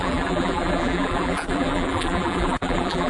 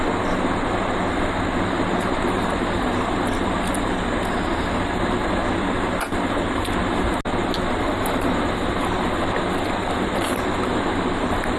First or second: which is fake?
first